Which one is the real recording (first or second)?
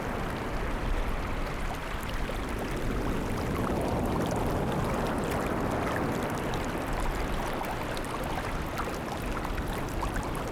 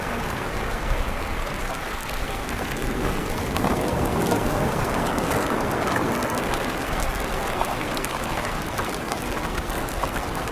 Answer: first